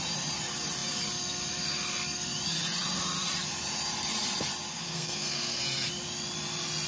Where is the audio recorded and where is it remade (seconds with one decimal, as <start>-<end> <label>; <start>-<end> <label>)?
0.0-4.7 recorded; 4.7-5.6 remade; 5.6-6.9 recorded